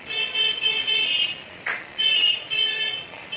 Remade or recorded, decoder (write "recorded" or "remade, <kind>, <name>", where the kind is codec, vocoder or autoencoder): remade, vocoder, Vocos